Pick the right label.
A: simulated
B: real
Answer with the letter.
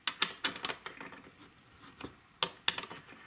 B